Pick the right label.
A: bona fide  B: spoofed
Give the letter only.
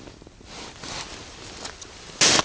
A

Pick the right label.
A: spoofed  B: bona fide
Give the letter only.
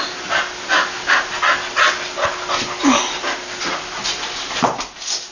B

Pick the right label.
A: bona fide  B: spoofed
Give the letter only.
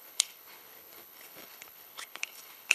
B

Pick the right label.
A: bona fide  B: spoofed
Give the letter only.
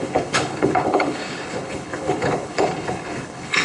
B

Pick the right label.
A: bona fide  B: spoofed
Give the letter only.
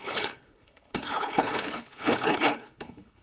B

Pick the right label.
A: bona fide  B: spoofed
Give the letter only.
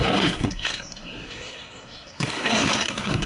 B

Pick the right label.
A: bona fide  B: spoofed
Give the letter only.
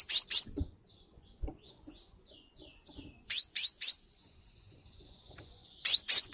B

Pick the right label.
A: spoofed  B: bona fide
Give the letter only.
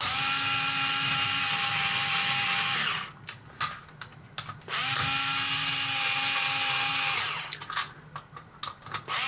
B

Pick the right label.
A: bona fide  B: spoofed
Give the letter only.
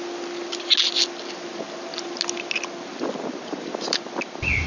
A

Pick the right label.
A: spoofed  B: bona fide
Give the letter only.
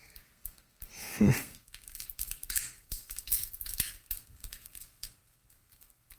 A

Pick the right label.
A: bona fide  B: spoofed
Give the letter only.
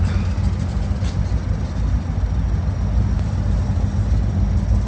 A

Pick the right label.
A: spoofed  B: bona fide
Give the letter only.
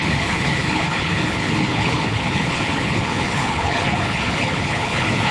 A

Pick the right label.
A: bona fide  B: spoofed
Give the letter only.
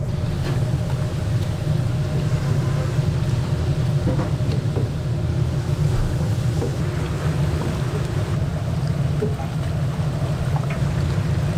A